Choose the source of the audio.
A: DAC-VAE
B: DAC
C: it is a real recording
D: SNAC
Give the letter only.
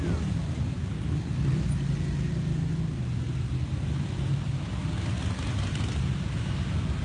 C